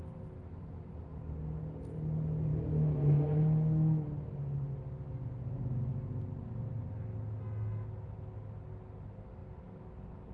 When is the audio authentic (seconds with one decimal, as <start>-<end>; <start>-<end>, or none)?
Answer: 0.0-10.3